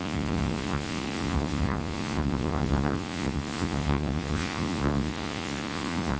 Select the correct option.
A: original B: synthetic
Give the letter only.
B